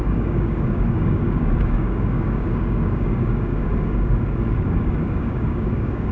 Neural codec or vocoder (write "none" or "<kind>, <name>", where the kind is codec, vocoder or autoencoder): codec, DAC